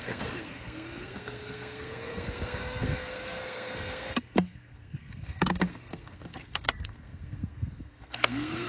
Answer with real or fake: fake